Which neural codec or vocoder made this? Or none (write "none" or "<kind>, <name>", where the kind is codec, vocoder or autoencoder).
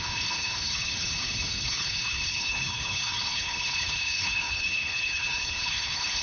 codec, HILCodec